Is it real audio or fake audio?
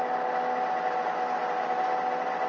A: real